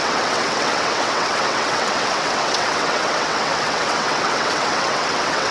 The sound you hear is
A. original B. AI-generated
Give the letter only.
B